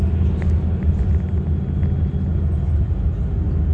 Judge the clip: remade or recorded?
recorded